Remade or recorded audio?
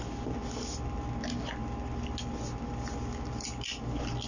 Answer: recorded